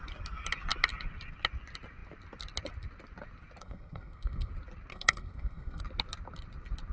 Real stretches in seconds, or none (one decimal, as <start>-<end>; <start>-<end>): 0.0-3.6; 4.5-4.9; 5.8-6.9